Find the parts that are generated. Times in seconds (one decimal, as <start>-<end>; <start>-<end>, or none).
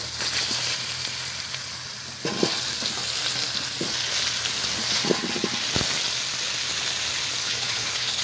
7.4-8.2